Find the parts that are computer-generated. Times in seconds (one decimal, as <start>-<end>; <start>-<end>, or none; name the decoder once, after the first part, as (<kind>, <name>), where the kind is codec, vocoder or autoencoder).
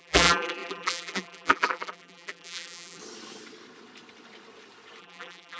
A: 0.0-3.0 (vocoder, BigVGAN v2); 5.0-5.6